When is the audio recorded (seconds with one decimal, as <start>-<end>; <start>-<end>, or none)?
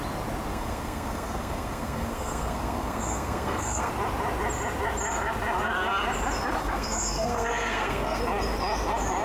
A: 0.0-0.5; 3.9-6.6; 8.2-9.2